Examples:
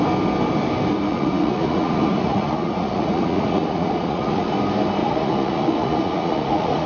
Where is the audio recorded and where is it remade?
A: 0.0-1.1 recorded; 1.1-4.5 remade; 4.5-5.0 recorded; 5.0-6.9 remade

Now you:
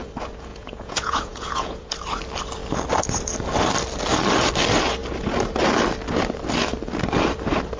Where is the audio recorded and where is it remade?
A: 0.0-0.5 recorded; 0.5-1.9 remade; 1.9-7.8 recorded

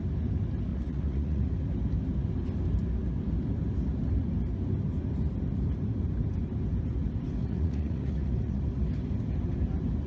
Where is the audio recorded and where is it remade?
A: 0.0-0.7 recorded; 0.7-1.5 remade; 1.5-7.4 recorded; 7.4-8.6 remade; 8.6-10.1 recorded

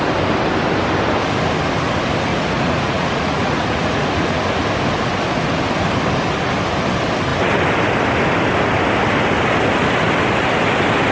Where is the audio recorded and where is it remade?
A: 0.0-2.3 recorded; 2.3-4.4 remade; 4.4-11.1 recorded

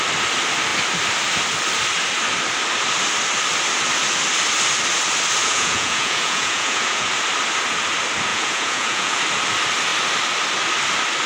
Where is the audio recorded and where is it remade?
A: 0.0-5.4 recorded; 5.4-7.1 remade; 7.1-8.3 recorded; 8.3-9.2 remade; 9.2-11.3 recorded